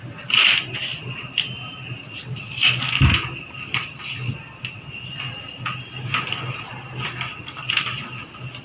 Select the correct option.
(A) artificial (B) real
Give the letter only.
B